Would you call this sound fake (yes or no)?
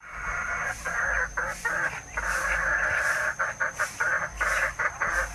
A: no